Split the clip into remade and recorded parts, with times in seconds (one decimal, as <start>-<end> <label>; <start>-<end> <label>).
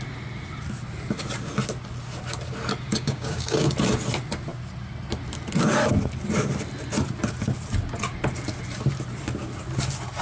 0.0-2.9 recorded; 2.9-3.7 remade; 3.7-10.2 recorded